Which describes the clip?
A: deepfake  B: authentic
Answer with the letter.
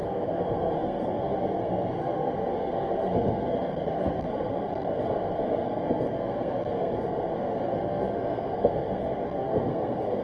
A